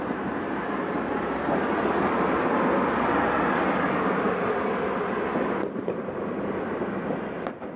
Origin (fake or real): real